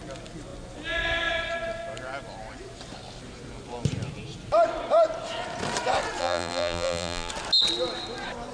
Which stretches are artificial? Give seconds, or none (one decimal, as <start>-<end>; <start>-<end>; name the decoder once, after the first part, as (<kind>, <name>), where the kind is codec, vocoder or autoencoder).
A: 6.2-7.3 (vocoder, BigVGAN v2)